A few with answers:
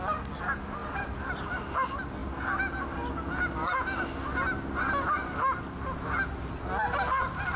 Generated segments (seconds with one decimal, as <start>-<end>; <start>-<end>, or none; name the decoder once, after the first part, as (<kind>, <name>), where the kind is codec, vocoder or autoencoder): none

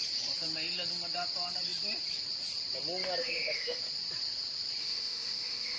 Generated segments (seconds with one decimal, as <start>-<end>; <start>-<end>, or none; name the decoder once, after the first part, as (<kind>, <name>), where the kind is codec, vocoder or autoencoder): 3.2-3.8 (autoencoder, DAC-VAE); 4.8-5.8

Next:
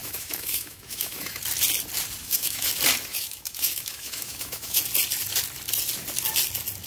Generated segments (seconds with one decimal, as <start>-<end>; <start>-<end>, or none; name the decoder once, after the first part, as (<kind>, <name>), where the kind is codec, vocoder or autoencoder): 0.0-1.4 (autoencoder, DAC-VAE); 2.2-2.7; 3.1-4.8